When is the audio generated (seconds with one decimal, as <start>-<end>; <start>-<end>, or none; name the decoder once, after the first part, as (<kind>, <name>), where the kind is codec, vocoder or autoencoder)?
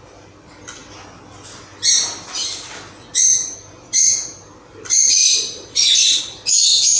5.2-6.2 (vocoder, BigVGAN v2)